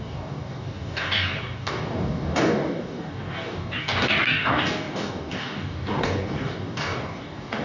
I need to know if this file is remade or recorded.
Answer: remade